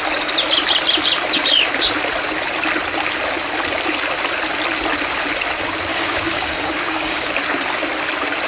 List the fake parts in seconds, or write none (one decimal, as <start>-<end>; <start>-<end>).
5.9-7.3